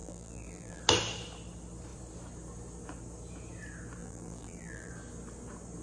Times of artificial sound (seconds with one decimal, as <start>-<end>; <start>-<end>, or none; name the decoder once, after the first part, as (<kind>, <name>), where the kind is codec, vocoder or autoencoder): 0.0-0.8 (vocoder, BigVGAN v2); 4.0-4.9